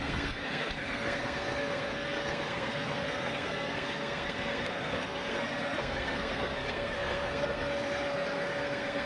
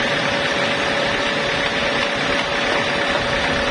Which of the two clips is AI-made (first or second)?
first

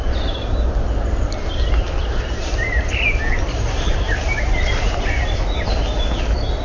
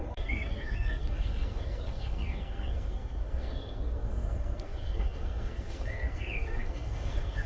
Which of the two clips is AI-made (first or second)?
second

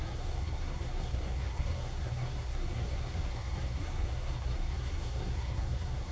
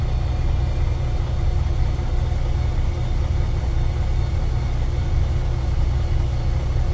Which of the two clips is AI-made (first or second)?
first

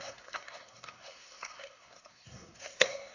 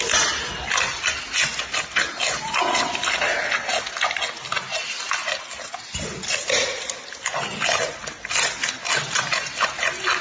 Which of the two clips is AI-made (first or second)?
first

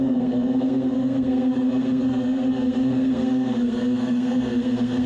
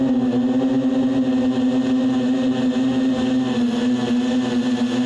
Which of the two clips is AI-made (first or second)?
first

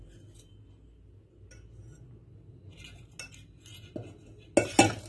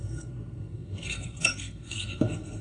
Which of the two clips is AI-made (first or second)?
second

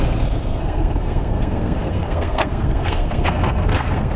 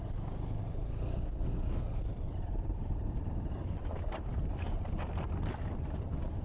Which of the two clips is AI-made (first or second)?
first